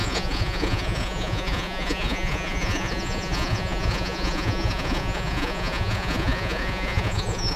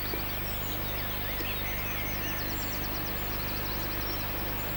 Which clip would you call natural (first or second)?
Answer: second